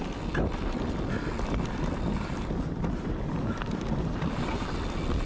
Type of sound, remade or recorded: recorded